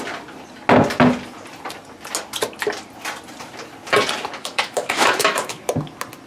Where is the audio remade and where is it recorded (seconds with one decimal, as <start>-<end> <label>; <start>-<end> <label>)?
0.0-4.4 recorded; 4.4-5.6 remade; 5.6-6.3 recorded